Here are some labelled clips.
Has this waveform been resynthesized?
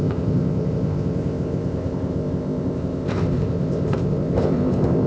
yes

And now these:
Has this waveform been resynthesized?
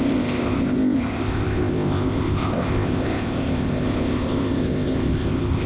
yes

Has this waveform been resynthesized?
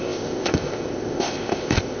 yes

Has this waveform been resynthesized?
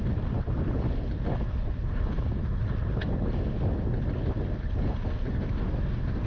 no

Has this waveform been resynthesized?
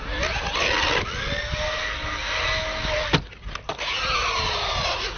no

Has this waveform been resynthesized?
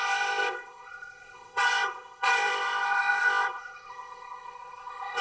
yes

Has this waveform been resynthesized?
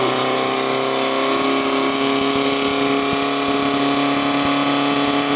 no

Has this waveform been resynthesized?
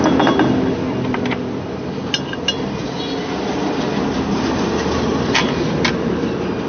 no